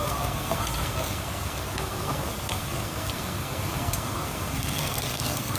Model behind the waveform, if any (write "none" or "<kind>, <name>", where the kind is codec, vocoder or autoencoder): codec, SNAC